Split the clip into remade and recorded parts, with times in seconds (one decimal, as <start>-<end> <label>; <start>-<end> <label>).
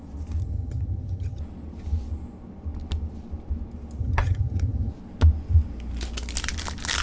0.0-0.4 recorded; 0.4-1.4 remade; 1.4-4.0 recorded; 4.0-4.9 remade; 4.9-7.0 recorded